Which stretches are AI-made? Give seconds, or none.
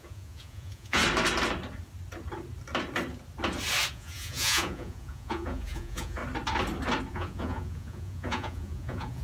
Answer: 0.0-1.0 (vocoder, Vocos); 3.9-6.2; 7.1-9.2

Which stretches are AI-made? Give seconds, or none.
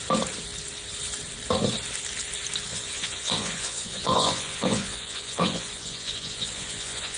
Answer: 2.7-7.2 (vocoder, Vocos)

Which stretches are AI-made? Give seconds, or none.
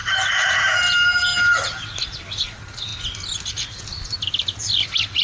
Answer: none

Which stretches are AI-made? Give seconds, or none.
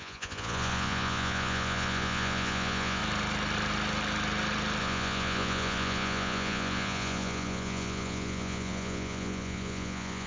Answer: 0.0-3.0 (vocoder, Vocos); 4.8-10.3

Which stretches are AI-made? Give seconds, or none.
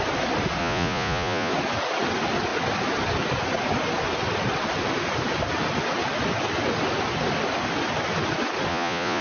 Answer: 0.6-1.5 (vocoder, Vocos); 8.7-9.2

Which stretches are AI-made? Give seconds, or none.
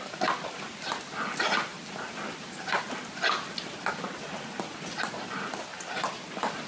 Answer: none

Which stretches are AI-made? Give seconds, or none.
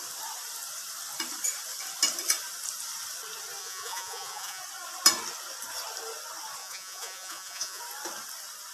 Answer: 3.6-4.6 (vocoder, Vocos); 6.6-7.8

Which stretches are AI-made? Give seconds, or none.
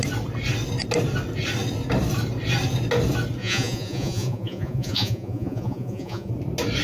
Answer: 3.4-6.3 (vocoder, Vocos)